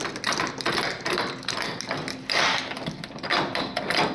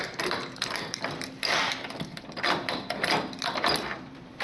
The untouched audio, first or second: first